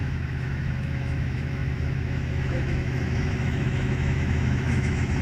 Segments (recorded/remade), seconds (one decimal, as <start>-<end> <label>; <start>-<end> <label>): 0.0-5.2 remade